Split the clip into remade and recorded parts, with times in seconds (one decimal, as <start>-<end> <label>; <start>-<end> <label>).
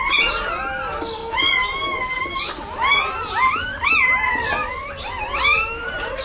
0.0-4.8 recorded; 4.8-6.2 remade